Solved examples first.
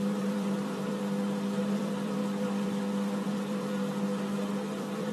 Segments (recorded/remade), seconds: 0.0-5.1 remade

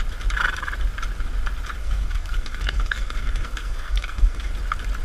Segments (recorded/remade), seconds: 0.0-1.8 recorded; 1.8-4.5 remade; 4.5-5.0 recorded

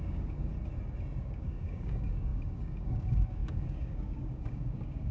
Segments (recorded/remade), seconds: 0.0-0.5 remade; 0.5-1.2 recorded; 1.2-5.1 remade

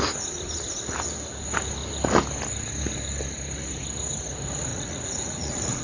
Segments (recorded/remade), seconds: 0.0-4.7 recorded; 4.7-5.8 remade